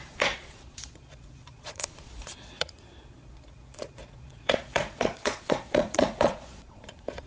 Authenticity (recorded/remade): remade